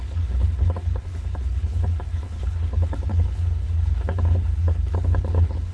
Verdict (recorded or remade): remade